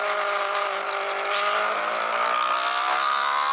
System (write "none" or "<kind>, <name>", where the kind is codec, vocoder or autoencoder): none